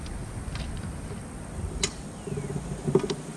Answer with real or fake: real